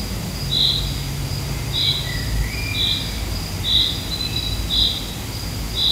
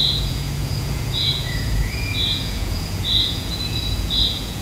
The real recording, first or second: first